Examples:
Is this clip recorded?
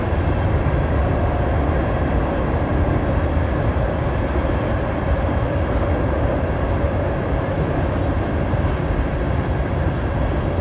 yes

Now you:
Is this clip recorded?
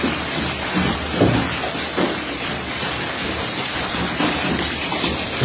yes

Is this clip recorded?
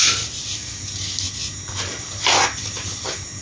yes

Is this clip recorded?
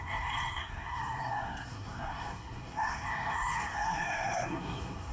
no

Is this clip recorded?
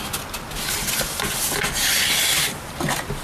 yes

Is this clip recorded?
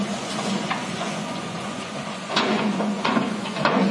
no